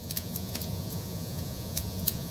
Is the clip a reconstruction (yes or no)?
yes